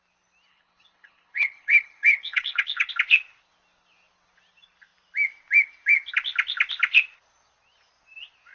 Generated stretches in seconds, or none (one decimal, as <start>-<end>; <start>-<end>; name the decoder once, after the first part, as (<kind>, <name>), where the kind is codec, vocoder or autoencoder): 0.5-2.9 (codec, HILCodec)